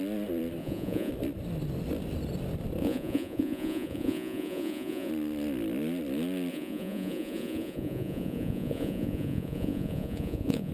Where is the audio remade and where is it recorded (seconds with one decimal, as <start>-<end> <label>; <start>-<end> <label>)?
0.0-0.6 recorded; 0.6-1.1 remade; 1.1-2.8 recorded; 2.8-5.1 remade; 5.1-6.5 recorded; 6.5-10.7 remade

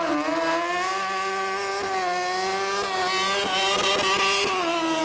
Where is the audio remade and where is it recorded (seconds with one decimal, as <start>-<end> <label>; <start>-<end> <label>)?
0.0-5.0 recorded

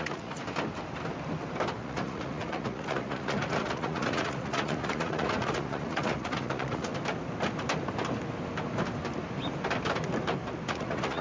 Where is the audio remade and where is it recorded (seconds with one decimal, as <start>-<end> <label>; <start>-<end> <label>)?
0.0-0.4 remade; 0.4-1.8 recorded; 1.8-6.9 remade; 6.9-10.7 recorded; 10.7-11.2 remade

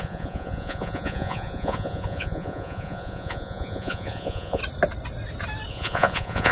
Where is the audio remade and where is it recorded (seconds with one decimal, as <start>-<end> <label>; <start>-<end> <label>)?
0.0-4.6 remade; 4.6-5.7 recorded; 5.7-6.5 remade